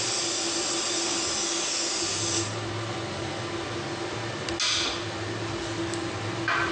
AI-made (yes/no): no